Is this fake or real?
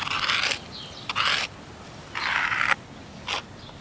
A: real